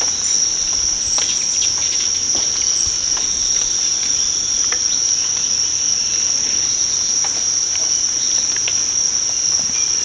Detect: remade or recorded recorded